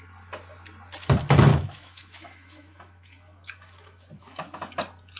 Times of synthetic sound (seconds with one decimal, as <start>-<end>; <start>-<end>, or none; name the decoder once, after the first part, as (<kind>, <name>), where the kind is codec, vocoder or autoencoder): 1.5-4.6 (autoencoder, DAC-VAE)